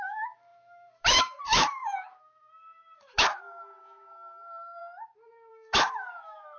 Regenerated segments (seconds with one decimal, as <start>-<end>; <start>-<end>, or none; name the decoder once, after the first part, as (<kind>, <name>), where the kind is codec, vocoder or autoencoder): 0.0-4.8 (autoencoder, DAC-VAE); 5.5-6.6